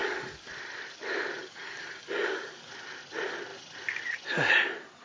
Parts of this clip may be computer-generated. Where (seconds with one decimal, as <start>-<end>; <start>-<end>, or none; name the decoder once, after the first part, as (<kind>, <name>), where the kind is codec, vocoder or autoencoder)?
0.0-0.5 (codec, DAC); 1.4-2.7